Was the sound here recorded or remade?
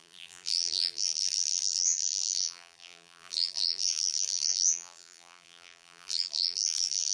remade